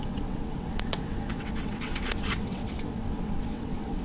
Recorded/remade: remade